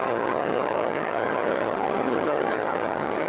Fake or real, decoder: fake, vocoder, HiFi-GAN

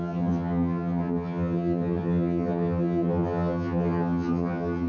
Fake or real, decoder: fake, vocoder, HiFi-GAN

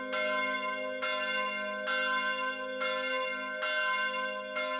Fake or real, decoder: real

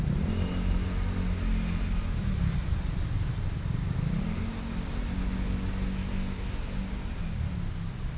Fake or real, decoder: real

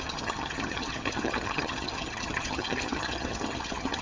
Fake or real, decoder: fake, vocoder, HiFi-GAN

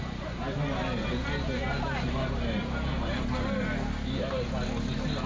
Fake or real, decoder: real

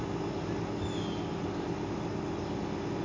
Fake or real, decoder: real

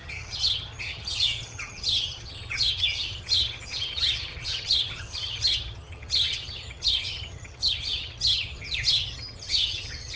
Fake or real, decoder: fake, vocoder, HiFi-GAN